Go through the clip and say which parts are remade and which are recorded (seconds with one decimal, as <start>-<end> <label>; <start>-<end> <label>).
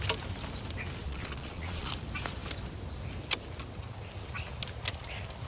0.0-1.0 recorded; 1.0-1.9 remade; 1.9-5.5 recorded